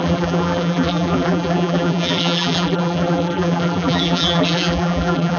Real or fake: fake